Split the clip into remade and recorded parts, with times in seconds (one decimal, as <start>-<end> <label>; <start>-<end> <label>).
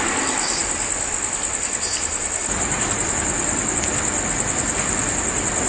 0.0-5.7 recorded